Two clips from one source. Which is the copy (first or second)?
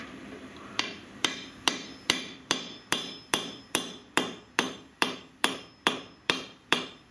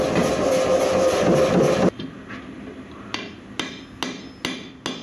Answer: first